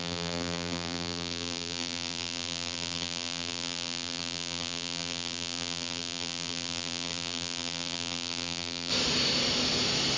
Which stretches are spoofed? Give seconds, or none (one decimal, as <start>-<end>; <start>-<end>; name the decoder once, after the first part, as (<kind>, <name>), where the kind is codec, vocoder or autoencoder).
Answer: 0.0-8.9 (vocoder, BigVGAN v2)